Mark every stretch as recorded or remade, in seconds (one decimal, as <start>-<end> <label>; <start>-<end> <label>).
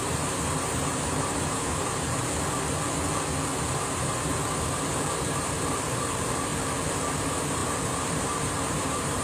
0.0-2.2 remade; 2.2-3.7 recorded; 3.7-6.5 remade; 6.5-7.1 recorded; 7.1-9.2 remade